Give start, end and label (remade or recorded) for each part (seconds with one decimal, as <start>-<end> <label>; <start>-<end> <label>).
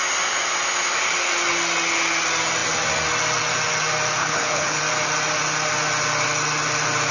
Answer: 0.0-4.2 recorded; 4.2-4.8 remade; 4.8-7.1 recorded